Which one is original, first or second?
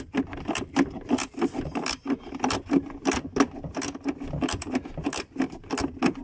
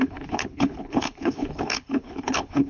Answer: first